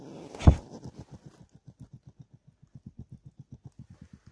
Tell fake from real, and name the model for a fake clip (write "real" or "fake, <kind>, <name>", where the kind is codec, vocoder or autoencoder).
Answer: real